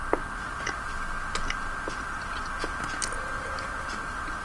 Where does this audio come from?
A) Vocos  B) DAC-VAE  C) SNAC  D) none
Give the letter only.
D